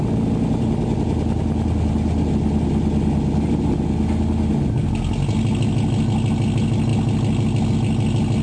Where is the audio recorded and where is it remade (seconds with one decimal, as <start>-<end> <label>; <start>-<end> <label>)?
0.0-8.4 recorded